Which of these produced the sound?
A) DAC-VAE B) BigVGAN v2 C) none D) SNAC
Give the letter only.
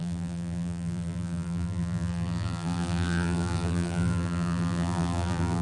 B